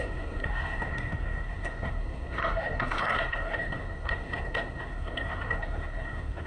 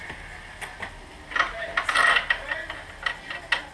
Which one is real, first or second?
second